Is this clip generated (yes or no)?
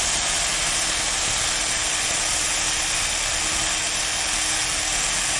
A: no